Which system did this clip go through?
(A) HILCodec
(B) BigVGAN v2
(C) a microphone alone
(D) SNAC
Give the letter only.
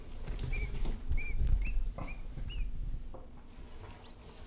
C